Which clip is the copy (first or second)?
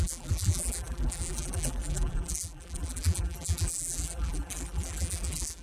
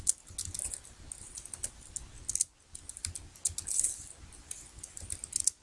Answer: first